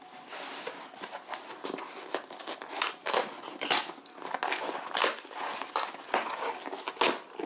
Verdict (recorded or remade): recorded